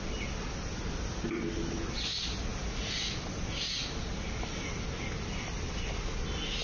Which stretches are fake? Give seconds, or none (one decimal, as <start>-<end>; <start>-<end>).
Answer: none